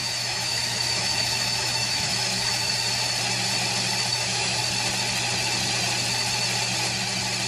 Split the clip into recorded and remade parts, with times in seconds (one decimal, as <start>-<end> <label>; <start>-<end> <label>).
0.0-2.7 remade; 2.7-4.1 recorded; 4.1-4.6 remade; 4.6-7.5 recorded